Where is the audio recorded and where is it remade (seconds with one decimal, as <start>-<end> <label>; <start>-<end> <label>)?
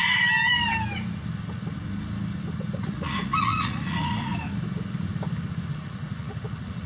0.0-2.8 recorded; 2.8-4.3 remade; 4.3-5.7 recorded; 5.7-6.9 remade